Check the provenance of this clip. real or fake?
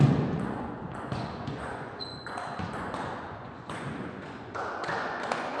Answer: fake